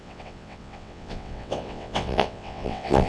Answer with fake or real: fake